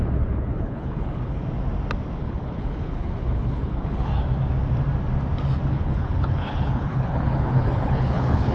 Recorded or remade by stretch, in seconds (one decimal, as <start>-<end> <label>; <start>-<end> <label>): 0.0-1.4 remade; 1.4-2.2 recorded; 2.2-4.1 remade; 4.1-5.7 recorded; 5.7-8.5 remade